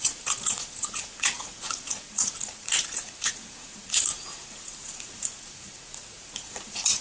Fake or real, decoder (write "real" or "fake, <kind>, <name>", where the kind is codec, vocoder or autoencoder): fake, vocoder, Vocos